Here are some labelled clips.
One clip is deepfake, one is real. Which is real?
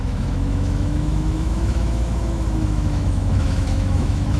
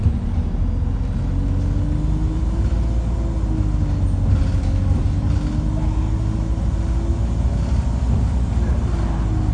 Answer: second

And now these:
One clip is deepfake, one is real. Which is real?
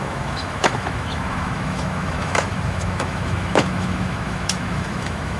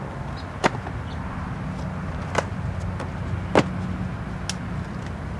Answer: second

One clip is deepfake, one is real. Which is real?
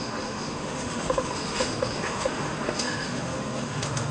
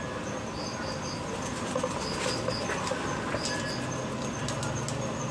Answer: second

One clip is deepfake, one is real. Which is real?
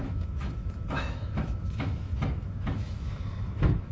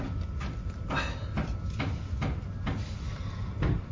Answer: second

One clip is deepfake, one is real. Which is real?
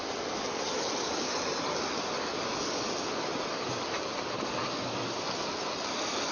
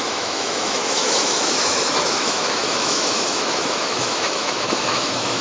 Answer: first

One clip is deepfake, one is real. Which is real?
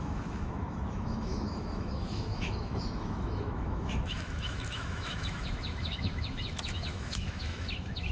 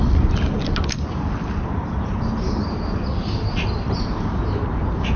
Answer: second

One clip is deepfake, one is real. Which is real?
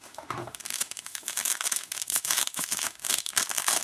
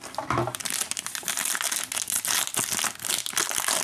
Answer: second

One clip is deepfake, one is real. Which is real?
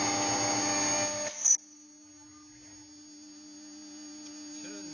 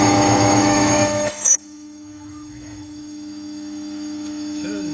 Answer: first